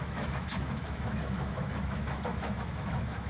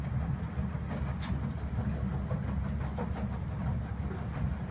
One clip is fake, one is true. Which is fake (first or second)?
first